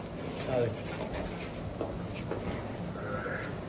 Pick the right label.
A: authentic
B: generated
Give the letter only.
A